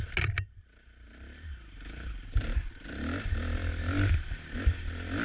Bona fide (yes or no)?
yes